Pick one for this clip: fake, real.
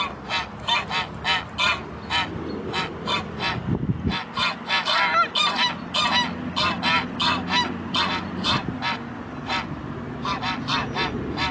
real